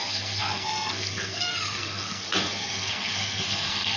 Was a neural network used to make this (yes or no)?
yes